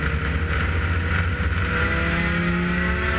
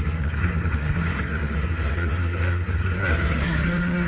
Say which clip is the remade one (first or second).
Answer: second